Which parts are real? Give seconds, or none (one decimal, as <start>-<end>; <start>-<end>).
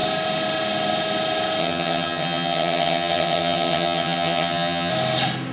0.0-1.6; 4.9-5.5